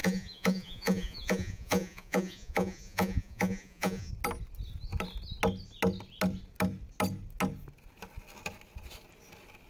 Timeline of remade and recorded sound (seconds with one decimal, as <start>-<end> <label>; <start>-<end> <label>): 0.0-4.1 remade; 4.1-9.7 recorded